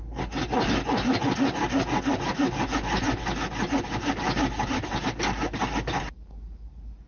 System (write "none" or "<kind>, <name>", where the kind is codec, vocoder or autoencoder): none